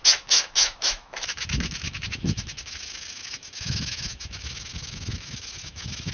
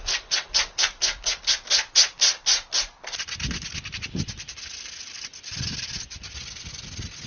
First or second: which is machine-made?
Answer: first